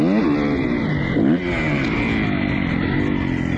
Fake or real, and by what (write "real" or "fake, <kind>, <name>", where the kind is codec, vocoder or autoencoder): real